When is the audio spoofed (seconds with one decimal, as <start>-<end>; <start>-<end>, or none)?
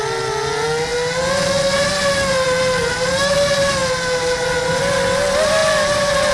none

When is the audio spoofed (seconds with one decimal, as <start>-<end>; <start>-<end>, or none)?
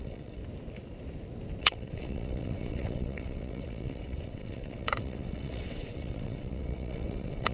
0.0-0.4; 1.6-7.5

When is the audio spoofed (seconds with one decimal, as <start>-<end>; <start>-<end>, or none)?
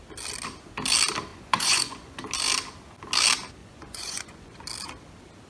1.3-2.2; 3.6-4.6